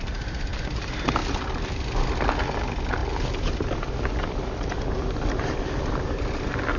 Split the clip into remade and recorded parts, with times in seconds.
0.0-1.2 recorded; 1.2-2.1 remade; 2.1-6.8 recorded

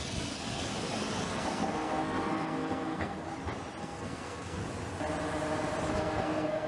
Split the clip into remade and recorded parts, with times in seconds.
0.0-0.7 remade; 0.7-1.3 recorded; 1.3-3.3 remade; 3.3-3.8 recorded; 3.8-4.6 remade; 4.6-5.9 recorded; 5.9-6.7 remade

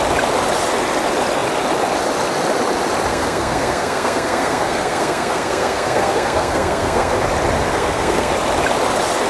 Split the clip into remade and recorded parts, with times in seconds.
0.0-3.1 recorded; 3.1-7.2 remade; 7.2-7.7 recorded; 7.7-8.3 remade; 8.3-9.3 recorded

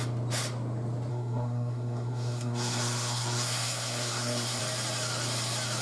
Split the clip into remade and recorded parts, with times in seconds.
0.0-1.1 recorded; 1.1-4.6 remade; 4.6-5.8 recorded

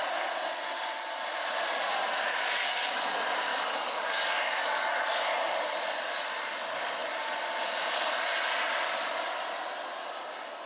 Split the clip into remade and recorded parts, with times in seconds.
0.0-2.3 recorded; 2.3-3.0 remade; 3.0-3.5 recorded; 3.5-4.9 remade; 4.9-10.7 recorded

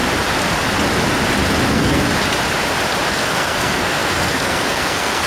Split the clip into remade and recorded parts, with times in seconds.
0.0-1.7 recorded; 1.7-2.1 remade; 2.1-3.1 recorded; 3.1-5.3 remade

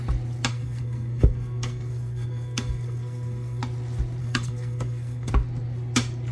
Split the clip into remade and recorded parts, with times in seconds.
0.0-0.5 recorded; 0.5-3.6 remade; 3.6-4.2 recorded; 4.2-5.3 remade; 5.3-6.3 recorded

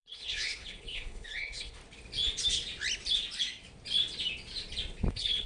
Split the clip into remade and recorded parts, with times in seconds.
0.0-1.8 remade; 1.8-5.1 recorded; 5.1-5.5 remade